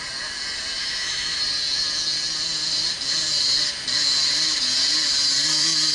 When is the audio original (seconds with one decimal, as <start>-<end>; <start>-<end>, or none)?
0.0-0.8; 1.4-5.9